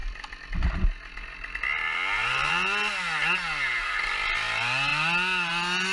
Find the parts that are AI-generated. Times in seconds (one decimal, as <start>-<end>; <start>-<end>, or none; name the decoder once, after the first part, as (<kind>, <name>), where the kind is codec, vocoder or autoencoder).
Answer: none

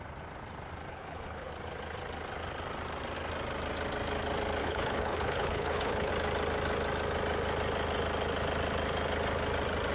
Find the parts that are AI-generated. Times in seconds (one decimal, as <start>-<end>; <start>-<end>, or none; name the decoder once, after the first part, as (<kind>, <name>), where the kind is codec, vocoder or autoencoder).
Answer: 0.9-1.5 (codec, HILCodec); 4.6-6.1

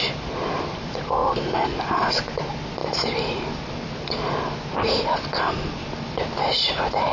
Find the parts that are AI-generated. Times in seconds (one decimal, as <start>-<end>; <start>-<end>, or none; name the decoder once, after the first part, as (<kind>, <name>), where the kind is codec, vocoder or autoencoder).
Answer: 0.0-1.2 (vocoder, BigVGAN v2); 2.0-2.8; 3.3-7.1